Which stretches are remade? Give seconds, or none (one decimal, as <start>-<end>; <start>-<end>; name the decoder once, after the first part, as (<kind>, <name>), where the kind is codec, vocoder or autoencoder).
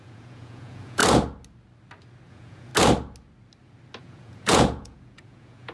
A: 0.0-1.0 (vocoder, Vocos); 2.3-2.7; 4.0-5.7